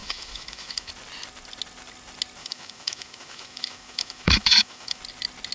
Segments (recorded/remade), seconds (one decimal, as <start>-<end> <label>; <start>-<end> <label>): 0.0-0.9 remade; 0.9-2.4 recorded; 2.4-5.0 remade; 5.0-5.5 recorded